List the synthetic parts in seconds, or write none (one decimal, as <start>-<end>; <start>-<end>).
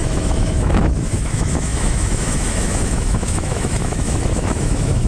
0.0-5.1